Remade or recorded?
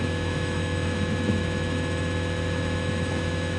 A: remade